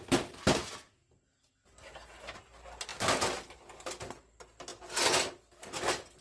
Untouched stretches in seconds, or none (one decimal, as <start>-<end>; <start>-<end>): 0.0-6.2

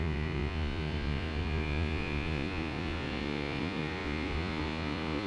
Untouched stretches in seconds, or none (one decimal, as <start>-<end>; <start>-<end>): none

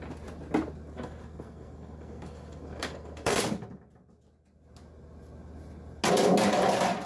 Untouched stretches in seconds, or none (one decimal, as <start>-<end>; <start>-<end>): 0.0-0.9; 3.4-7.1

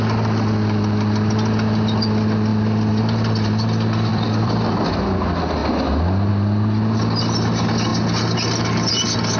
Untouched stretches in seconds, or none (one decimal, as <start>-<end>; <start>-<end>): 0.0-4.1; 4.9-9.4

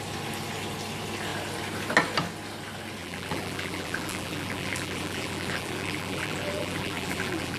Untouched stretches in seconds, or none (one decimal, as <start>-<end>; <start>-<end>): 0.0-3.0